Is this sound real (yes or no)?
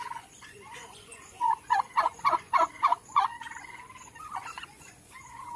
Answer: no